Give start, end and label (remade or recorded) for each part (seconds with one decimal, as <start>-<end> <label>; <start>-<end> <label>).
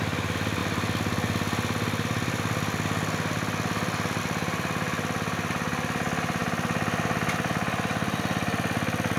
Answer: 0.0-9.2 recorded